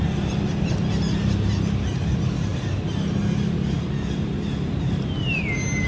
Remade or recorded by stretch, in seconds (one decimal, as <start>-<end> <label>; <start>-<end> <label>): 0.0-5.9 recorded